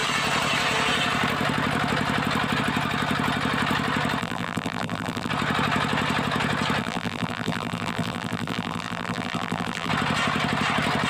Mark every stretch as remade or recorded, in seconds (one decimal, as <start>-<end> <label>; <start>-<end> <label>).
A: 0.0-4.2 recorded; 4.2-5.3 remade; 5.3-6.8 recorded; 6.8-9.9 remade; 9.9-11.1 recorded